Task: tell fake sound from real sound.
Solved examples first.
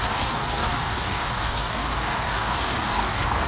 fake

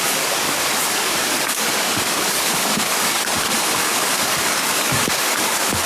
fake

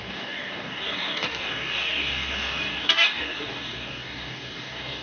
fake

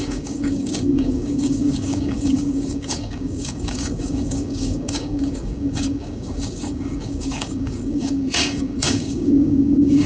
fake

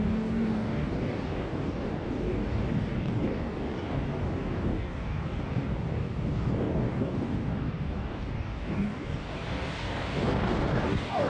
fake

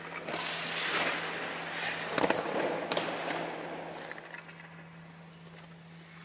real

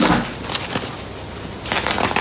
real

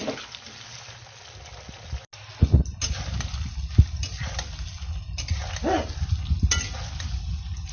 real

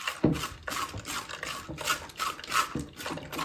real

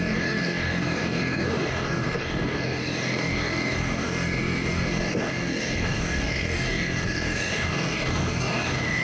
fake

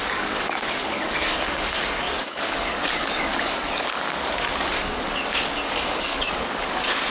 fake